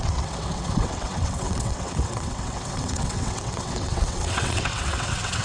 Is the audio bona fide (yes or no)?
no